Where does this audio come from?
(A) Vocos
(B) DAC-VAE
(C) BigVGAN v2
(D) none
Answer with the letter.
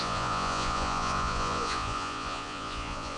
A